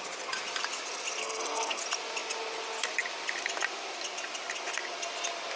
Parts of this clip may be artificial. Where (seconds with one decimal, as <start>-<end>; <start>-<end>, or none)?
1.2-1.8